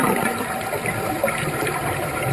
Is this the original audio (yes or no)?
no